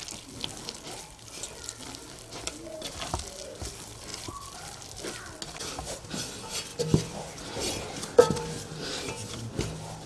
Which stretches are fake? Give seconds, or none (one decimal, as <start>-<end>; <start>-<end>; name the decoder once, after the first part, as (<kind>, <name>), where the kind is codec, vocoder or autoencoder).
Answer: 4.1-5.2 (vocoder, BigVGAN v2); 6.7-9.5